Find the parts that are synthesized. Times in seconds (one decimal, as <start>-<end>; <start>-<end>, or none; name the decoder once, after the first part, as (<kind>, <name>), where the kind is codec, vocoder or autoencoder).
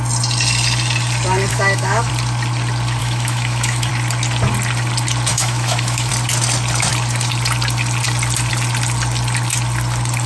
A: 1.5-2.1 (autoencoder, DAC-VAE); 3.0-3.9; 5.3-6.1